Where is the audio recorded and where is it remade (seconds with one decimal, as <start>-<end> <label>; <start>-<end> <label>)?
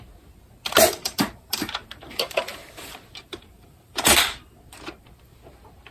0.0-1.0 recorded; 1.0-4.5 remade; 4.5-5.9 recorded